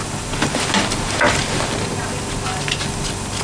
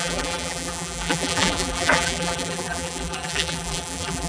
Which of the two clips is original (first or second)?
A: first